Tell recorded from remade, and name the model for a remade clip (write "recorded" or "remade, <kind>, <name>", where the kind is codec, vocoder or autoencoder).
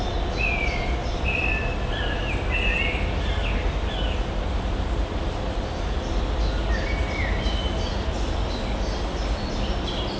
recorded